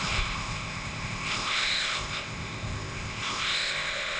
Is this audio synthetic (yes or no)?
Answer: yes